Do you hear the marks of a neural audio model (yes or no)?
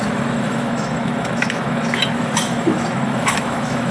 yes